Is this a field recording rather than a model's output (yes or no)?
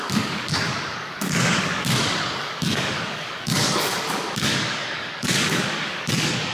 no